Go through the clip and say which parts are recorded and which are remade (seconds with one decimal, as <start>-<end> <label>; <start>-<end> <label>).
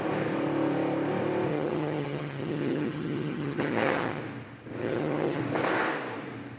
0.0-1.5 recorded; 1.5-4.2 remade; 4.2-4.8 recorded; 4.8-5.4 remade; 5.4-6.6 recorded